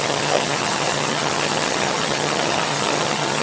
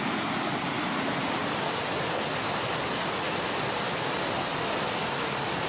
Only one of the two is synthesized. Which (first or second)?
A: first